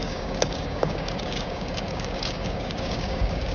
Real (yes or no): no